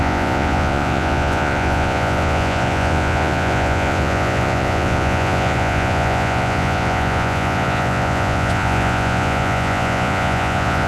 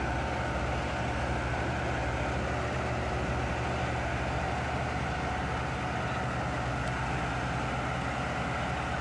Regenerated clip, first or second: first